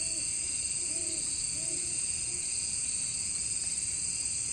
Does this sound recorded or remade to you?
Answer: remade